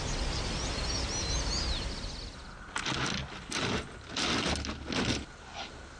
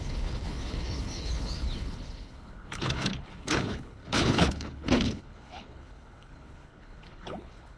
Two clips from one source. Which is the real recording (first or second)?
first